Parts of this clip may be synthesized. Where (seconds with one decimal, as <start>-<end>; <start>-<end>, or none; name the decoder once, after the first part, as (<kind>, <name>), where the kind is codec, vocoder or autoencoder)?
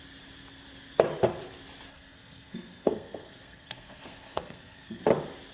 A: 1.9-5.0 (codec, SNAC)